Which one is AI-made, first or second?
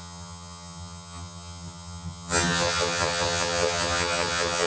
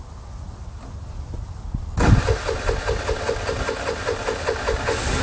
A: first